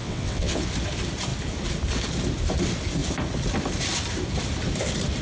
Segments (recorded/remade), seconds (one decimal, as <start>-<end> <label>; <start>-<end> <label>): 0.0-0.6 remade; 0.6-5.2 recorded